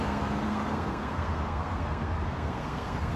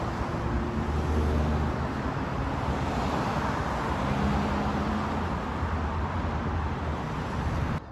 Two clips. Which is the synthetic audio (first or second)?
first